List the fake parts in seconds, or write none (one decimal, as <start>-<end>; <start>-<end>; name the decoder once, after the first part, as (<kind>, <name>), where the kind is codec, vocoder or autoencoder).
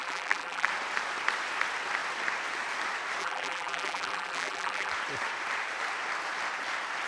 0.0-0.7 (vocoder, BigVGAN v2); 3.2-4.9